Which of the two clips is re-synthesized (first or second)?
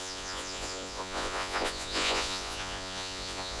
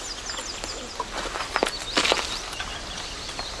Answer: first